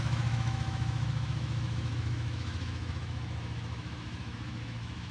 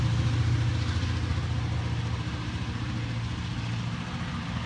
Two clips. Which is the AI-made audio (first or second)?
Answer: first